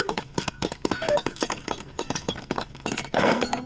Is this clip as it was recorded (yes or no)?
no